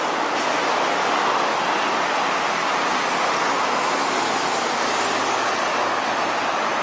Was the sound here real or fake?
real